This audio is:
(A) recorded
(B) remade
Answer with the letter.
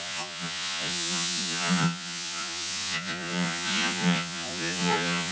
B